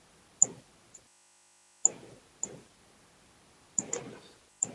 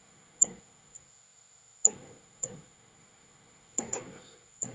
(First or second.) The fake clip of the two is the second